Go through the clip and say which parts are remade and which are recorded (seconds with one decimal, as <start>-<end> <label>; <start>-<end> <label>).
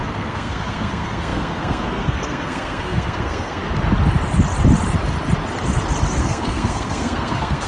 0.0-3.6 remade; 3.6-6.2 recorded; 6.2-7.7 remade